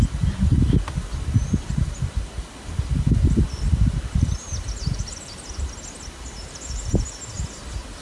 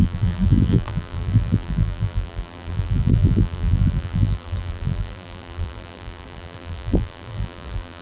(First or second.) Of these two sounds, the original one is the first